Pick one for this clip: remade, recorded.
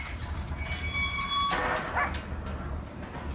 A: recorded